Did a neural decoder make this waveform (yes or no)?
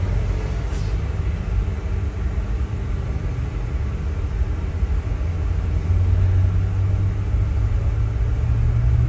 no